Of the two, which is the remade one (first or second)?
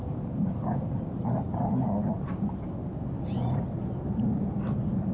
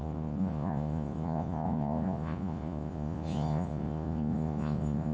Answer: second